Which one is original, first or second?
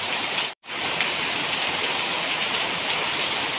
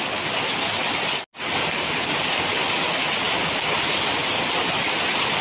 second